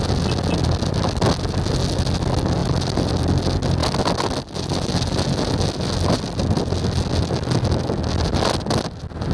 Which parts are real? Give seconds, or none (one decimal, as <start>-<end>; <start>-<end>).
0.0-2.6; 3.2-9.3